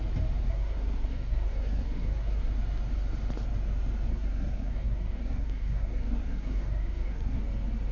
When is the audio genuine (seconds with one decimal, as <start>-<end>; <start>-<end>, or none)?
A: 0.0-0.5; 2.5-4.1; 7.4-7.9

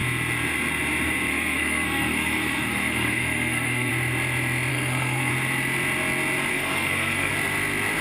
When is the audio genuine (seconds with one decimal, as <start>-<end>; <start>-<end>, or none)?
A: 0.0-1.3; 3.9-4.7; 5.3-6.5; 7.3-8.0